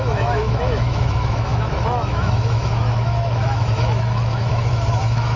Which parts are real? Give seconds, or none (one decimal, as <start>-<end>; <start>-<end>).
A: none